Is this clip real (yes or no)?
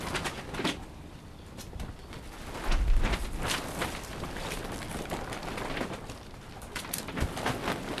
yes